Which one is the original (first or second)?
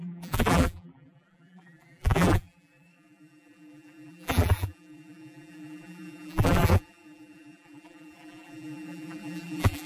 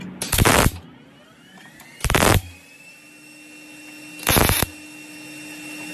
second